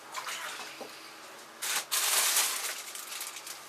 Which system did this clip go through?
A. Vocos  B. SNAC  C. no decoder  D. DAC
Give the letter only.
C